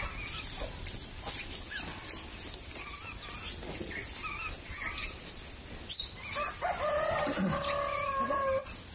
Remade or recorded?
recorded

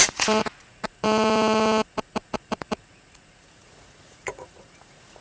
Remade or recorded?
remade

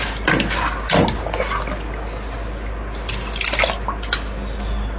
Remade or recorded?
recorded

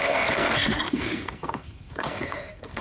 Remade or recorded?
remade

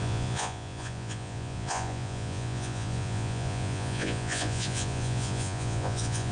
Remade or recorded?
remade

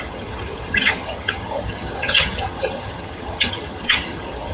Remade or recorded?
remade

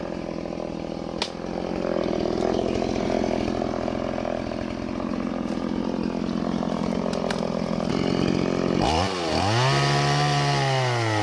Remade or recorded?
recorded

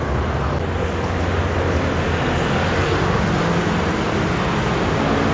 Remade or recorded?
recorded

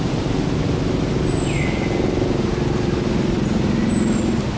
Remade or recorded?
recorded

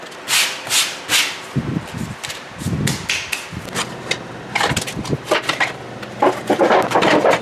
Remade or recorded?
recorded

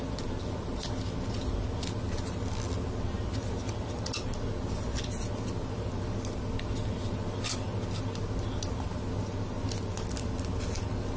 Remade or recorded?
recorded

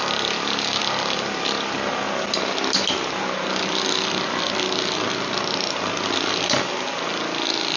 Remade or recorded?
recorded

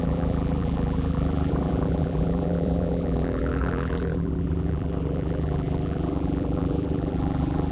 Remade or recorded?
remade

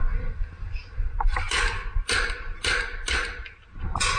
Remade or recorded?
recorded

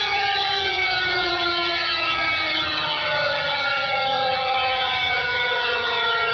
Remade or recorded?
remade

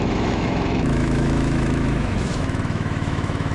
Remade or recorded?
remade